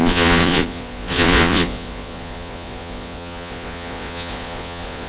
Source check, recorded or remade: remade